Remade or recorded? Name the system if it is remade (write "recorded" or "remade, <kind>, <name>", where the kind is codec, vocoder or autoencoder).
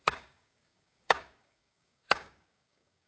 remade, codec, DAC